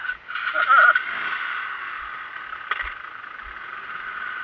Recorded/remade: recorded